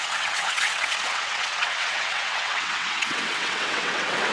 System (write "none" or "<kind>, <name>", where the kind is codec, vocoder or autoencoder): vocoder, WaveNeXt